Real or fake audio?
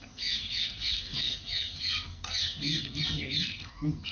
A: fake